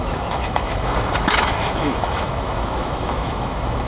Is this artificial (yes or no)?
yes